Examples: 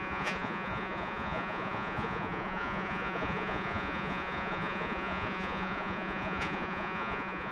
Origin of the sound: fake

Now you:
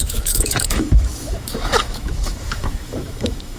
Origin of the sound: fake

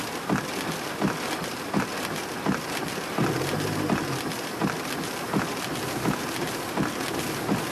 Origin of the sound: real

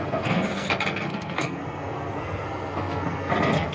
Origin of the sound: fake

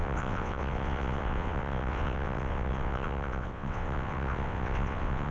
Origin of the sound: fake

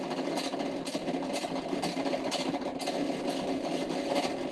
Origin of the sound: real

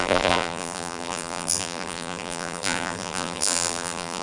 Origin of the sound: fake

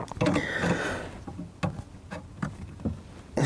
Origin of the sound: real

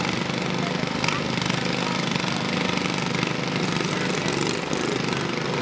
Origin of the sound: real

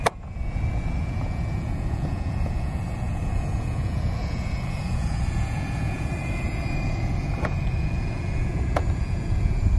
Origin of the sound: fake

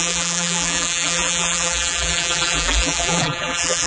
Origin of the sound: fake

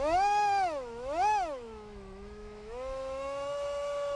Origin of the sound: fake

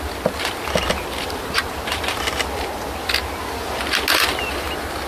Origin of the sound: real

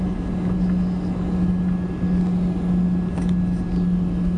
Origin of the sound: real